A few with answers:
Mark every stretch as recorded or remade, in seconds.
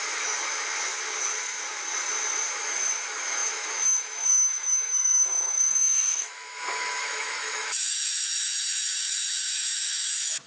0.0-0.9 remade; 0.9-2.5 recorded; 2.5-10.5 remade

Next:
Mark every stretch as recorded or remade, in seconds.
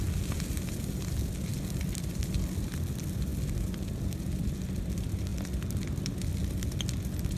0.0-7.4 recorded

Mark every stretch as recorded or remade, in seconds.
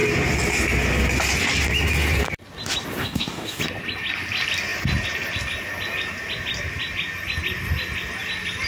0.0-3.0 recorded; 3.0-3.6 remade; 3.6-8.7 recorded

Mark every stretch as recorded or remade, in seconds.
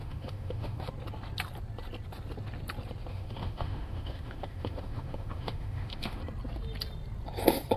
0.0-0.9 remade; 0.9-3.1 recorded; 3.1-6.2 remade; 6.2-7.8 recorded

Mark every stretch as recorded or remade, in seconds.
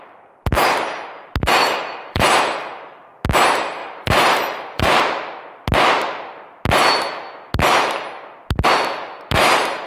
0.0-1.6 recorded; 1.6-2.2 remade; 2.2-3.8 recorded; 3.8-5.0 remade; 5.0-9.9 recorded